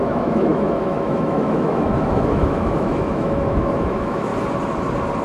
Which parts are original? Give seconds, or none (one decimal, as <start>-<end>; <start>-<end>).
4.3-5.2